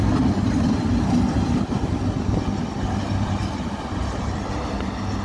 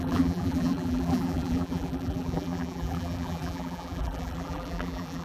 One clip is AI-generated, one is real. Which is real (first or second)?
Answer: first